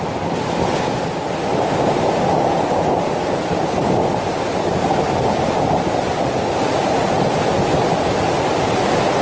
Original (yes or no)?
yes